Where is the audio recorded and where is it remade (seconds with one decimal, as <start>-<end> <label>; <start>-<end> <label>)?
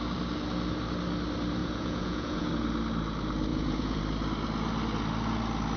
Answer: 0.0-1.6 recorded; 1.6-2.5 remade; 2.5-3.5 recorded; 3.5-4.0 remade; 4.0-5.8 recorded